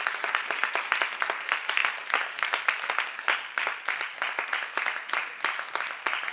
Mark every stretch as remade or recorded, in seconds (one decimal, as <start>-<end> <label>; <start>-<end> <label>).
0.0-6.3 recorded